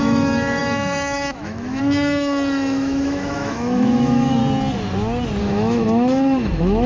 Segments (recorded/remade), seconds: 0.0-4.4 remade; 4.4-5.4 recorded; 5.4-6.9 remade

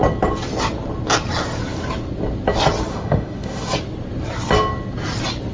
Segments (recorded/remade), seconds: 0.0-2.9 recorded; 2.9-3.7 remade; 3.7-5.5 recorded

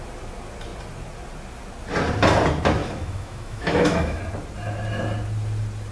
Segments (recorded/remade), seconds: 0.0-2.8 recorded; 2.8-4.2 remade; 4.2-5.9 recorded